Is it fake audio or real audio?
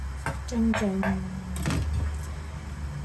real